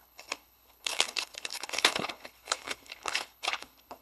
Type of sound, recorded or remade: remade